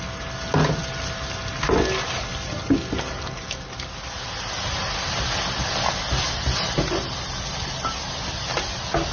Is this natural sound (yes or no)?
yes